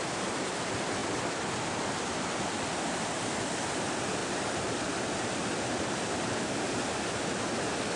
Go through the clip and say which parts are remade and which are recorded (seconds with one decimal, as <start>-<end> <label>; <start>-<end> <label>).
0.0-4.2 recorded; 4.2-5.5 remade; 5.5-8.0 recorded